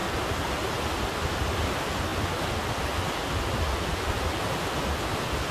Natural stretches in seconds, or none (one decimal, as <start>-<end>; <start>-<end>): 0.0-5.5